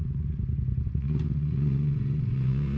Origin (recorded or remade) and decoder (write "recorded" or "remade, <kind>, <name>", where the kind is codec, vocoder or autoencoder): remade, vocoder, Vocos